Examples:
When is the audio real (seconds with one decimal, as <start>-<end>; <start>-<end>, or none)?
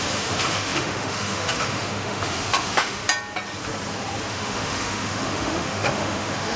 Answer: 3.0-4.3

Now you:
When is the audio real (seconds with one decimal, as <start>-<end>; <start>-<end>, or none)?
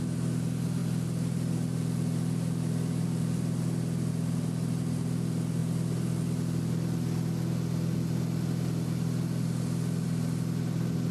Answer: 0.0-11.1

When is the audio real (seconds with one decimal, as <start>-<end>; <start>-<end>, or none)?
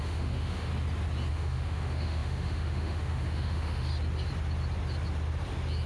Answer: 0.7-1.3; 3.9-5.9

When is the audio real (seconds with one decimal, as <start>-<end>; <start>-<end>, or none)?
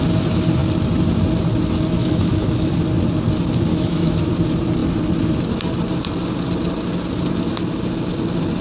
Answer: 0.0-2.0; 2.7-3.7; 4.2-8.6